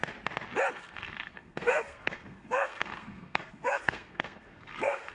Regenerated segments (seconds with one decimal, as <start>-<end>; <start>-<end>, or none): 0.7-5.1

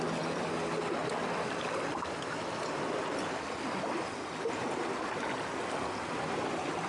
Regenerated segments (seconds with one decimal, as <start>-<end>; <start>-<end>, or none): none

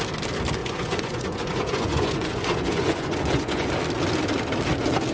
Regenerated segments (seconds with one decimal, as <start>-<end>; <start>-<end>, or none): 0.6-3.7

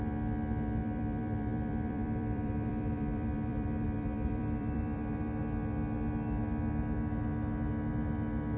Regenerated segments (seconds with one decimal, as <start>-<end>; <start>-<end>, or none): 0.8-5.4

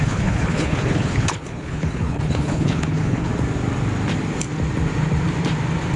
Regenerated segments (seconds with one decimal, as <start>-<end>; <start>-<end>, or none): 0.0-3.3

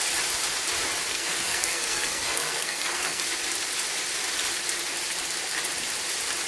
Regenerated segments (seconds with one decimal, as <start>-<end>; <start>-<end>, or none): 1.1-3.2

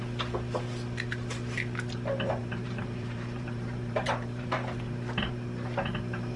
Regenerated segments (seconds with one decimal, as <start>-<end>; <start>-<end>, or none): 2.4-6.4

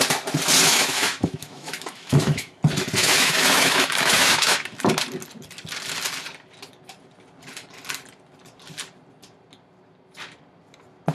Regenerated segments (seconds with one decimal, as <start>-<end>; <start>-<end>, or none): 0.7-2.5; 3.0-4.9